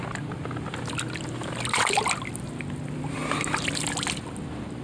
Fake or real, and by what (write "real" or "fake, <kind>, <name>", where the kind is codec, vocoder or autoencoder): real